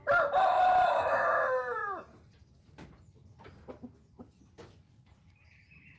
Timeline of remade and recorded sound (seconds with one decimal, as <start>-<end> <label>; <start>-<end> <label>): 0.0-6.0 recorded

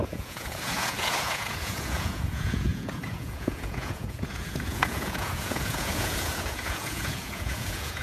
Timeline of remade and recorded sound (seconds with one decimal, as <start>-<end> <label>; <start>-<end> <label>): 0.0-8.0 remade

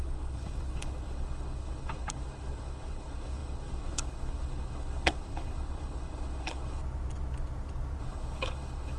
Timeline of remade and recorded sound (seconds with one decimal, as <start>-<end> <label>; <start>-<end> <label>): 0.0-6.8 remade; 6.8-8.0 recorded; 8.0-9.0 remade

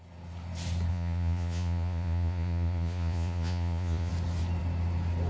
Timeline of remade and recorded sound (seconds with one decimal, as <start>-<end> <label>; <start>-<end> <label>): 0.0-0.9 recorded; 0.9-4.1 remade; 4.1-5.3 recorded

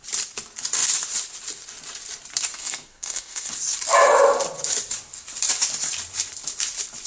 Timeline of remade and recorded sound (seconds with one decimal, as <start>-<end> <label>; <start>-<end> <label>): 0.0-2.5 recorded; 2.5-3.5 remade; 3.5-7.1 recorded

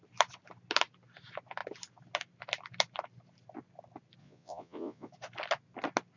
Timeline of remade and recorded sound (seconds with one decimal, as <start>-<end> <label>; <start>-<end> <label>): 0.0-4.2 recorded; 4.2-5.1 remade; 5.1-6.2 recorded